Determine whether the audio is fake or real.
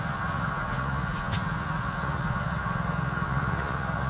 fake